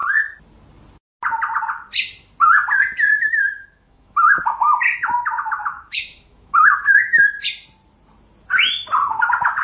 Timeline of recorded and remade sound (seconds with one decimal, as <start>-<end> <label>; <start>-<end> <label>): 0.0-3.1 recorded; 3.1-7.2 remade; 7.2-9.6 recorded